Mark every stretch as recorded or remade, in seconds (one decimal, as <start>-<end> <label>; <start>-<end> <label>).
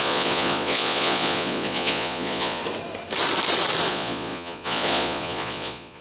0.0-2.6 remade; 2.6-3.9 recorded; 3.9-6.0 remade